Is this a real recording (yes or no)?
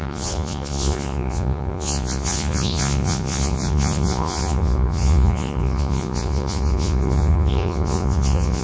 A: no